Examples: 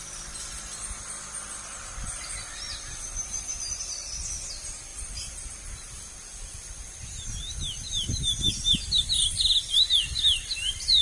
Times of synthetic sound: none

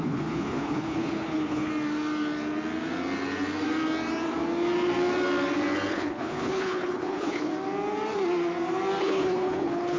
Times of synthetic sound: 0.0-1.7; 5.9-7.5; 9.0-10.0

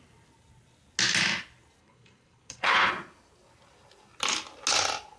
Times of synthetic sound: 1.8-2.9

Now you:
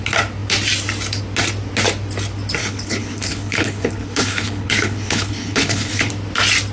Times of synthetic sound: 2.6-6.1

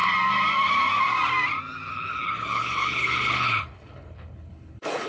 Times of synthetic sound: 1.9-5.1

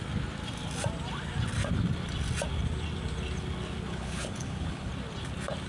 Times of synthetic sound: 3.9-4.9